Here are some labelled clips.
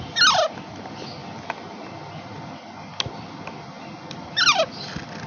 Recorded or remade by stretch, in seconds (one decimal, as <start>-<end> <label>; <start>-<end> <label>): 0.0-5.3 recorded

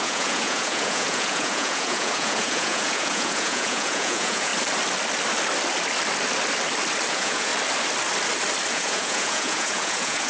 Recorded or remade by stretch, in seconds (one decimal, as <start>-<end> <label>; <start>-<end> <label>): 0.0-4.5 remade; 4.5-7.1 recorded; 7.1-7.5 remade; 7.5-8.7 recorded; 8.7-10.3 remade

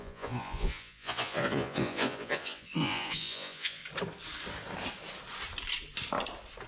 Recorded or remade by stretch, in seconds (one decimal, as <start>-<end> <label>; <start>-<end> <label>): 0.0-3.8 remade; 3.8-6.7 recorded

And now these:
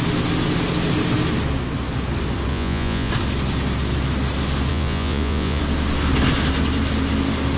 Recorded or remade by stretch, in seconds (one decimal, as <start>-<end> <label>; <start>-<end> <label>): 0.0-2.5 recorded; 2.5-3.1 remade; 3.1-4.7 recorded; 4.7-5.6 remade; 5.6-7.6 recorded

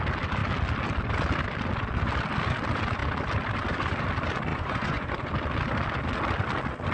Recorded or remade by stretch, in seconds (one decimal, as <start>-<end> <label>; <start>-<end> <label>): 0.0-4.5 recorded; 4.5-5.3 remade; 5.3-6.9 recorded